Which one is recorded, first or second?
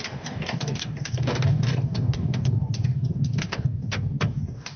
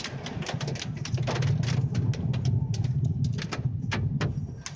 second